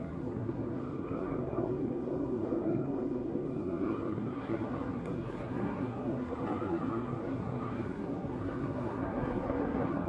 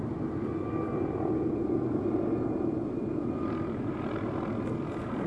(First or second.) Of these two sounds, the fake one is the first